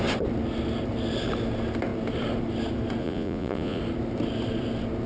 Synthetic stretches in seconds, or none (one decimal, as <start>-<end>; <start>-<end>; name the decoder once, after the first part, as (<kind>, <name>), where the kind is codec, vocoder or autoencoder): 3.0-3.8 (vocoder, Vocos)